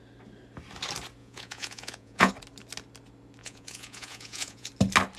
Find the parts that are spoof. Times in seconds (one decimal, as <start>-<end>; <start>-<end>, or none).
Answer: 1.2-2.3; 3.4-4.7